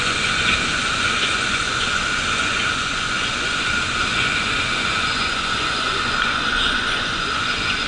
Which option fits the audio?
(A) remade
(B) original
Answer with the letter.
A